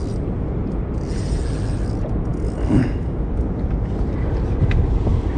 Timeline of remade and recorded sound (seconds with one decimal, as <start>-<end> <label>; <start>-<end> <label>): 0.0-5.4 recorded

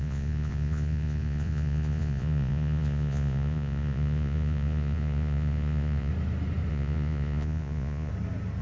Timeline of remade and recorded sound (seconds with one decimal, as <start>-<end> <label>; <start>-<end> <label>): 0.0-6.1 remade; 6.1-6.7 recorded; 6.7-8.1 remade; 8.1-8.6 recorded

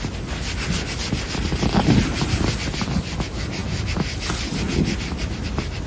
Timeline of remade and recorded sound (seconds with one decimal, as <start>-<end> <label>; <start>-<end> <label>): 0.0-5.9 recorded

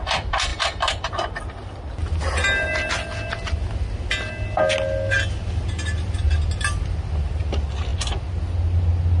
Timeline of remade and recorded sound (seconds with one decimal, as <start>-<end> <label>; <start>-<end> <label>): 0.0-9.2 recorded

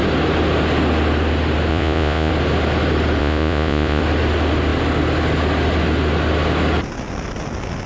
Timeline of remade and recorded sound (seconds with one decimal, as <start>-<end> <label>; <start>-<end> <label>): 0.0-1.7 recorded; 1.7-2.3 remade; 2.3-3.2 recorded; 3.2-4.0 remade; 4.0-7.9 recorded

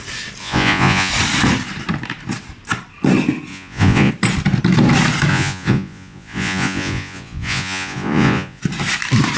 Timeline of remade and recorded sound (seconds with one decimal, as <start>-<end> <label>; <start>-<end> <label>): 0.0-0.4 recorded; 0.4-1.1 remade; 1.1-3.5 recorded; 3.5-4.1 remade; 4.1-5.3 recorded; 5.3-8.6 remade; 8.6-9.4 recorded

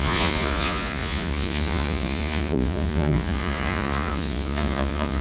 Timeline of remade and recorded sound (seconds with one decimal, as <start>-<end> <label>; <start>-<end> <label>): 0.0-5.2 remade

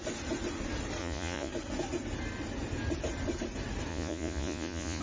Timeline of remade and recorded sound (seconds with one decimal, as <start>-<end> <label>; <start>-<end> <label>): 0.0-1.0 recorded; 1.0-1.5 remade; 1.5-3.9 recorded; 3.9-5.0 remade